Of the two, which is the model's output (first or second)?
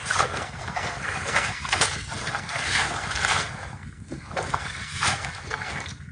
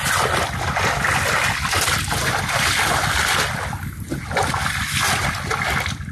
first